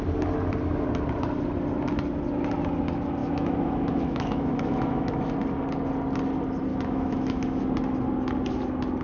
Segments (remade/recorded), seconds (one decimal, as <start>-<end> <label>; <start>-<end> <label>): 0.0-3.2 recorded; 3.2-5.3 remade; 5.3-6.7 recorded; 6.7-7.6 remade; 7.6-9.0 recorded